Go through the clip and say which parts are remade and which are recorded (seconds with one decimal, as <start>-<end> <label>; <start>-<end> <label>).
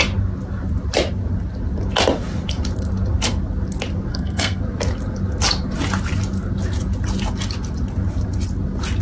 0.0-4.1 recorded; 4.1-4.6 remade; 4.6-9.0 recorded